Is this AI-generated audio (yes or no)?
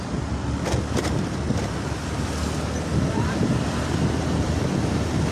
yes